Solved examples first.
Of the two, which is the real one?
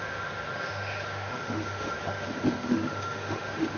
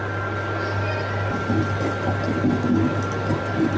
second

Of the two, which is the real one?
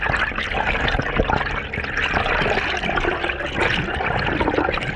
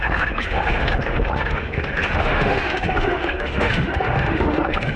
first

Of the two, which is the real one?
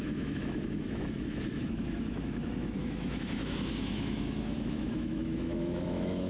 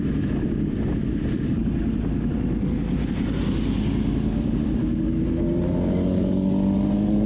second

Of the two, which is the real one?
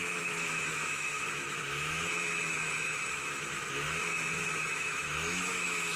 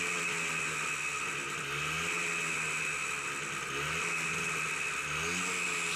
second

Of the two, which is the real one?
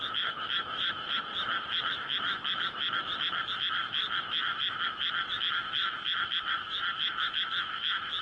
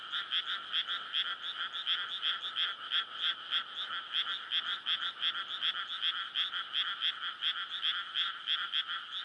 second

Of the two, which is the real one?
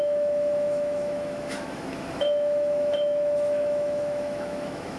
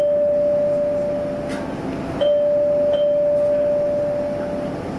second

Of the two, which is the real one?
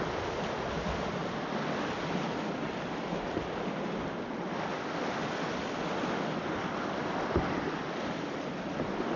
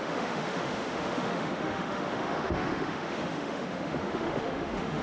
first